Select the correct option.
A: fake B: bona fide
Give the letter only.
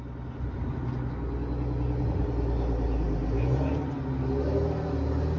B